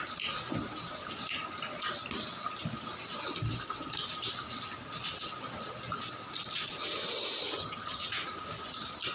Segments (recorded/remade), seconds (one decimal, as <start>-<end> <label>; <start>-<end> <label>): 0.0-7.4 recorded; 7.4-8.1 remade; 8.1-9.1 recorded